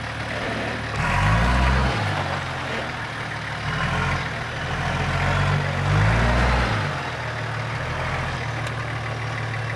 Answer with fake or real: real